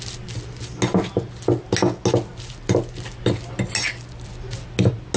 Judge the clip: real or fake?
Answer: real